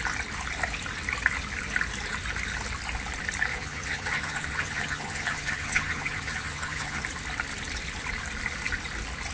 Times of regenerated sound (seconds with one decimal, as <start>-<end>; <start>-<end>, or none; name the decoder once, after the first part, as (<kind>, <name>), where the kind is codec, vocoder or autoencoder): 3.5-7.0 (vocoder, HiFi-GAN)